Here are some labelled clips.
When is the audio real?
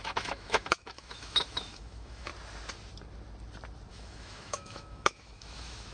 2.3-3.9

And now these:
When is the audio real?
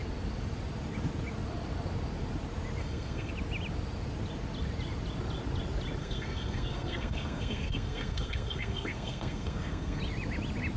0.0-2.8; 3.3-6.0; 10.0-10.8